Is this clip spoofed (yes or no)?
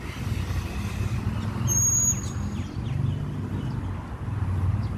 no